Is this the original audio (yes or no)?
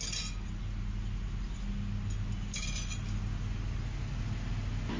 yes